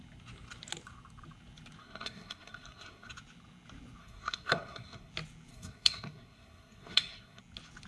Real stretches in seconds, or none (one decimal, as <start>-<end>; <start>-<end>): 0.0-1.8; 3.1-4.0; 5.1-5.5; 7.4-7.9